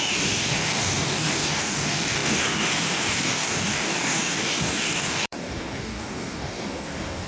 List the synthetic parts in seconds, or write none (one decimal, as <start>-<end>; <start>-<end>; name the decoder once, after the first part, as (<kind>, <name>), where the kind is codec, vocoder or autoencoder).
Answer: 0.0-7.3 (codec, DAC)